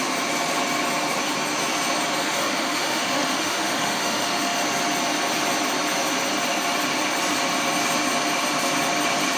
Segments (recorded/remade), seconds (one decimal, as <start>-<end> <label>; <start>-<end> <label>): 0.0-2.2 recorded; 2.2-4.6 remade; 4.6-9.4 recorded